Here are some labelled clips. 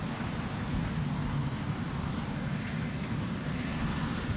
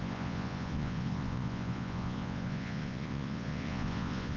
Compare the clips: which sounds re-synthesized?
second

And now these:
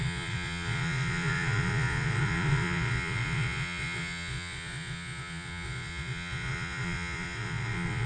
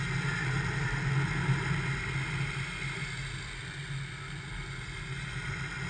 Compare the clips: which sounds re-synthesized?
first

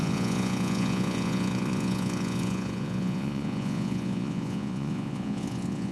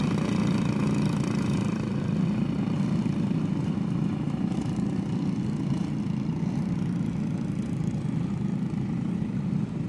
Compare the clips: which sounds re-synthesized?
first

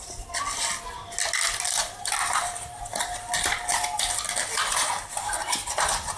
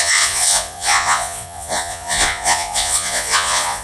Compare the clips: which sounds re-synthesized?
second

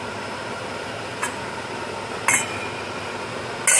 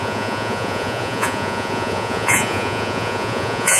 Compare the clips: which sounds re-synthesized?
second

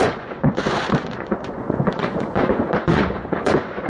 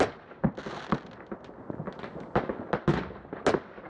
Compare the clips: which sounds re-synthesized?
first